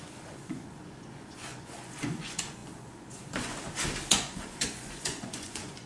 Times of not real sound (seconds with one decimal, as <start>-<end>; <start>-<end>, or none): 0.0-3.5; 4.1-5.9